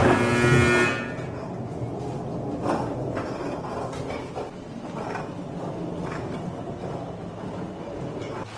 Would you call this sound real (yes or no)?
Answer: yes